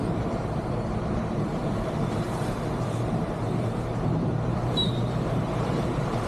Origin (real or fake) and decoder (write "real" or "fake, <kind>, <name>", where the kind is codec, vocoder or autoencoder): fake, vocoder, BigVGAN v2